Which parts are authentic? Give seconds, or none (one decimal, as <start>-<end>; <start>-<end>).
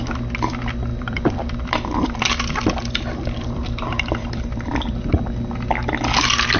0.0-0.9; 4.7-6.6